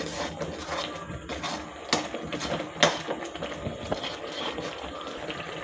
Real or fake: real